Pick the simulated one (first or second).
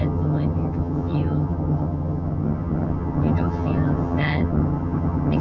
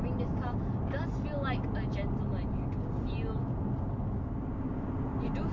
first